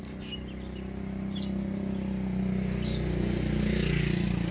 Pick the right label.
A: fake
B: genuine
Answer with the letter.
B